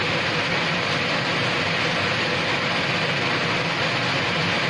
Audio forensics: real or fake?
real